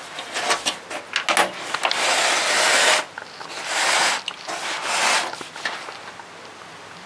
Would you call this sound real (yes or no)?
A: yes